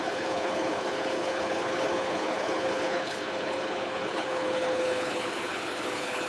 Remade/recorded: remade